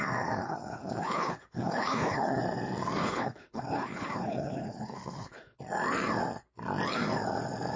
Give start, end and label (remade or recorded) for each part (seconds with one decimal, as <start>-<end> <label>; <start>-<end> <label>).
0.0-0.4 recorded; 0.4-2.4 remade; 2.4-3.0 recorded; 3.0-5.6 remade; 5.6-7.8 recorded